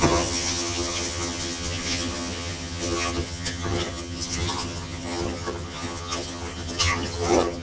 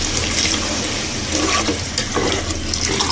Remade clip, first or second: first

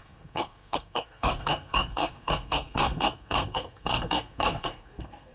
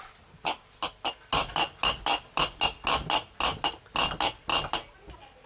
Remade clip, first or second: first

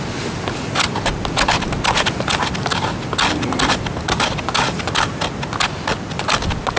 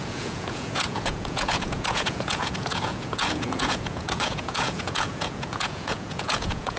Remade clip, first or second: second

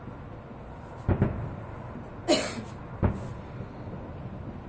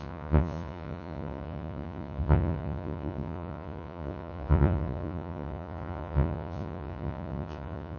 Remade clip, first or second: second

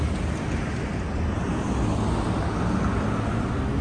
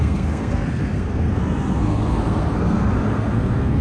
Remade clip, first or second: second